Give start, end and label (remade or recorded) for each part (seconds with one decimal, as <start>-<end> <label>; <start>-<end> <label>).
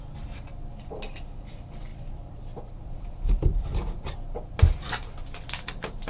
0.0-1.9 recorded; 1.9-5.6 remade; 5.6-6.1 recorded